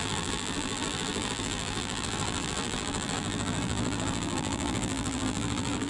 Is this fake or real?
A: fake